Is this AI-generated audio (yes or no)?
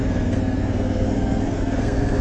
yes